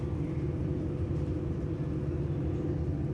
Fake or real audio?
real